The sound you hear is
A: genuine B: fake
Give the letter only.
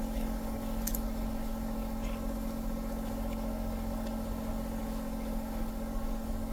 B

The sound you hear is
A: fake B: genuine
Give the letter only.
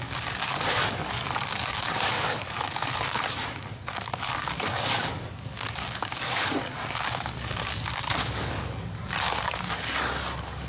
A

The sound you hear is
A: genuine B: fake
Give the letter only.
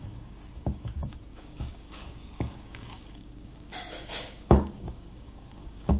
B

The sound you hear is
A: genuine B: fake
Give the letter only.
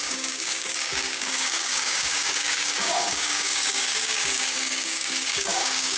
B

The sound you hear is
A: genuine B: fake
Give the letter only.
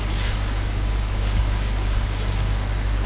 B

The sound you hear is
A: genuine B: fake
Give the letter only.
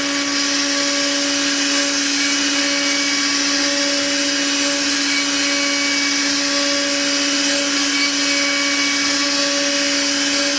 A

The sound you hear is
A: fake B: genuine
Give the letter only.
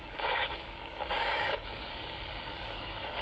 A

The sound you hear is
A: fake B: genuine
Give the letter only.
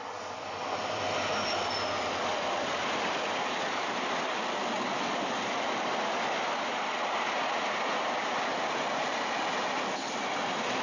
B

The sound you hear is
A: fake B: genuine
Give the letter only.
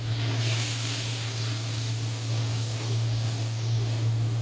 A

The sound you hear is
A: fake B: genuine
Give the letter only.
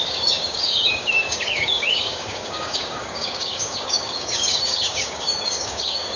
A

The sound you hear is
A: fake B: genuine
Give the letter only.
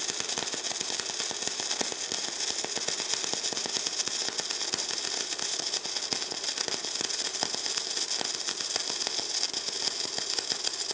B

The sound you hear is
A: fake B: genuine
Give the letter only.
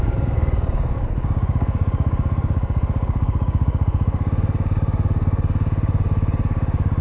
A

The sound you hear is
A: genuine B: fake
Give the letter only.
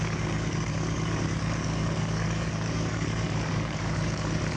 B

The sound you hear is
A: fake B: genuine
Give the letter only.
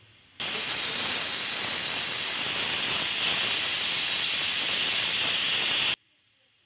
B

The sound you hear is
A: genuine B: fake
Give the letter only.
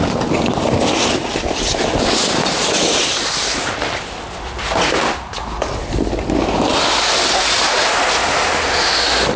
A